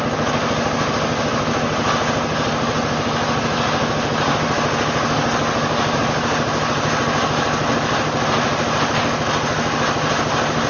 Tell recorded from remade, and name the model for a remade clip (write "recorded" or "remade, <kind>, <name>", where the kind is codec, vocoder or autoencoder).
recorded